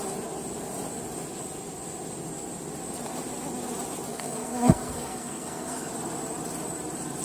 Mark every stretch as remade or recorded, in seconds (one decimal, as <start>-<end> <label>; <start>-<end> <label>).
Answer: 0.0-4.1 recorded; 4.1-5.9 remade; 5.9-7.2 recorded